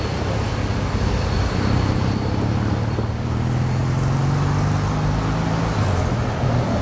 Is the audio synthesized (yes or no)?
no